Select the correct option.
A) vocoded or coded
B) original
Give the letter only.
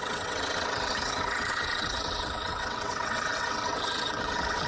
A